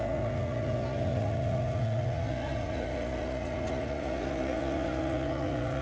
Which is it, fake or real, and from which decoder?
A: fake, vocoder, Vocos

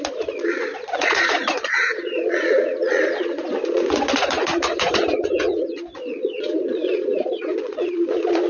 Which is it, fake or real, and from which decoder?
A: fake, vocoder, Vocos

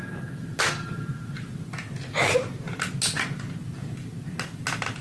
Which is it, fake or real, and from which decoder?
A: real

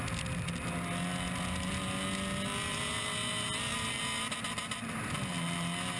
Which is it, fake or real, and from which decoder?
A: real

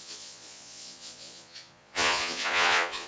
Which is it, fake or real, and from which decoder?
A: fake, vocoder, Vocos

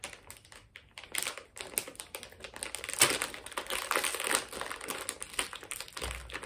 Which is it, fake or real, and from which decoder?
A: real